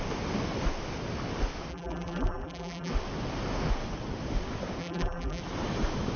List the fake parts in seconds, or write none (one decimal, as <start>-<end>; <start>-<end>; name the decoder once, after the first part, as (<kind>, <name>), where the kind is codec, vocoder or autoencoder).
1.7-2.9 (vocoder, BigVGAN v2); 4.8-5.4